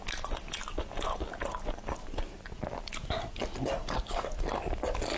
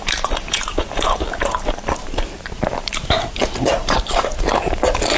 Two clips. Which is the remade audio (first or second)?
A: second